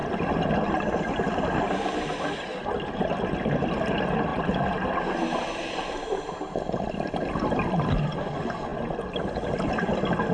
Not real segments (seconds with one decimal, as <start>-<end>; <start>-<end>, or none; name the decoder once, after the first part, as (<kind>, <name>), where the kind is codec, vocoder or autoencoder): none